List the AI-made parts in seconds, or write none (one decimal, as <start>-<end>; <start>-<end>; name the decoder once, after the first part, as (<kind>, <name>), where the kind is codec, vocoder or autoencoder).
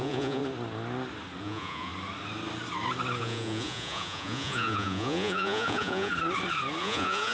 0.0-0.4 (vocoder, Vocos); 1.4-1.9; 3.2-6.1; 6.8-7.3